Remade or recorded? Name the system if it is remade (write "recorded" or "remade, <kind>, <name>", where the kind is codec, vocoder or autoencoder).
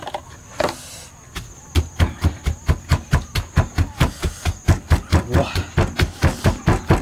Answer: recorded